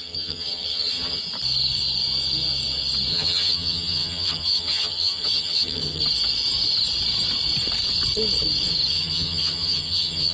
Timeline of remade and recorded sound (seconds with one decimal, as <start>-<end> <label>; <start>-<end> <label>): 0.0-1.2 remade; 1.2-3.1 recorded; 3.1-6.0 remade; 6.0-8.9 recorded; 8.9-10.3 remade